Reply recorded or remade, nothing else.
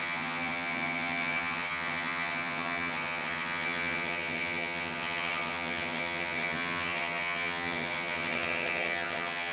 remade